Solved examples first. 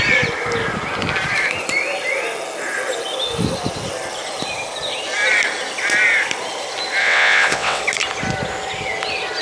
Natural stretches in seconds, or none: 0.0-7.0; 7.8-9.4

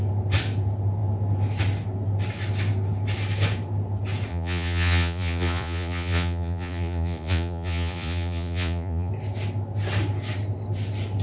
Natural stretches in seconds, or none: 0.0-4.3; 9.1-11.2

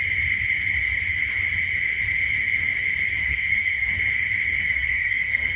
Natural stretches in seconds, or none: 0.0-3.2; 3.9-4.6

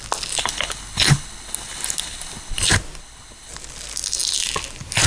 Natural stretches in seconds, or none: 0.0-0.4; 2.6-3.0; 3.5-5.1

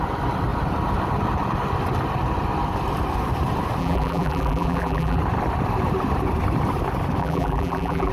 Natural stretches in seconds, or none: 0.0-3.8; 5.2-7.2

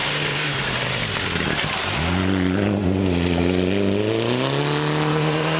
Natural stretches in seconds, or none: 0.0-5.6